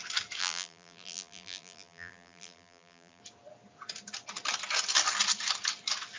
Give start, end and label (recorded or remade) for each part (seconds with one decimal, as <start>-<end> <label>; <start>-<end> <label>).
0.0-0.4 recorded; 0.4-3.2 remade; 3.2-6.2 recorded